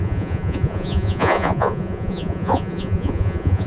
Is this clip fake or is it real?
fake